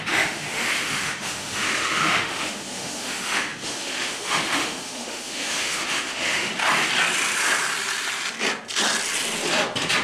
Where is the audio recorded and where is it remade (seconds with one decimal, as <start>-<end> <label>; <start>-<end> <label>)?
0.0-6.5 remade; 6.5-10.0 recorded